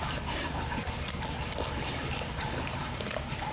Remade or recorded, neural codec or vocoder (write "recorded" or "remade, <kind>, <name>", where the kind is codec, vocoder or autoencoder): recorded